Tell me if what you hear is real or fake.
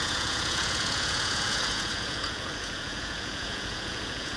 fake